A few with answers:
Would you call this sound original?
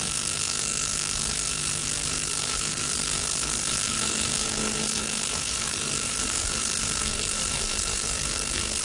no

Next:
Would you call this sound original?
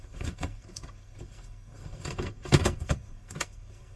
no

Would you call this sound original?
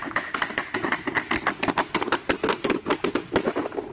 yes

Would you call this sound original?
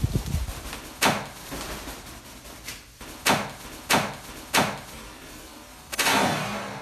yes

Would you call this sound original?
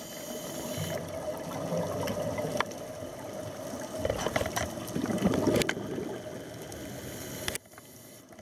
yes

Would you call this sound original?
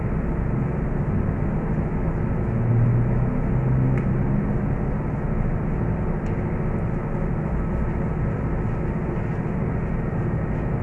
yes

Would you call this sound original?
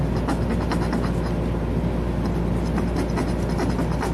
yes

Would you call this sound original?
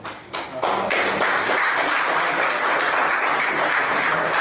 yes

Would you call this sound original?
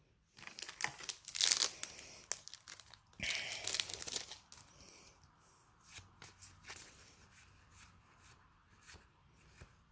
yes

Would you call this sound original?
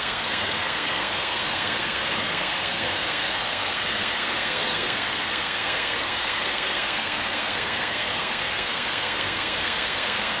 no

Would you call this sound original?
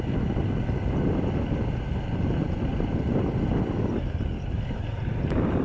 yes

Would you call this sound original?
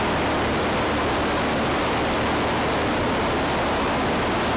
yes